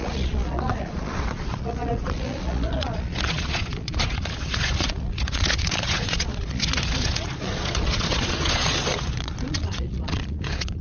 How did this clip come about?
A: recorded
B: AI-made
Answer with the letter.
B